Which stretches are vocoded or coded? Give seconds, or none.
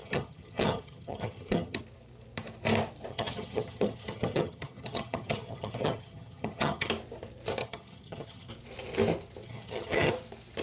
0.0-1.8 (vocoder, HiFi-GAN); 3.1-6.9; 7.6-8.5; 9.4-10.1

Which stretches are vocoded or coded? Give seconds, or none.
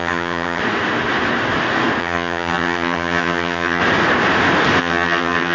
0.0-0.6 (vocoder, HiFi-GAN); 2.0-3.8; 4.8-5.5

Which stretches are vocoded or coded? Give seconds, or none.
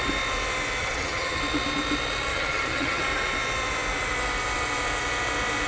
0.8-1.4 (vocoder, HiFi-GAN); 2.3-3.0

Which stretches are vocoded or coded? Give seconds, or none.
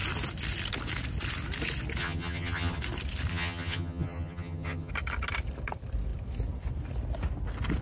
2.0-2.8 (vocoder, HiFi-GAN); 3.3-4.9